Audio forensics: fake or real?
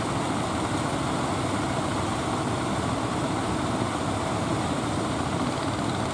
real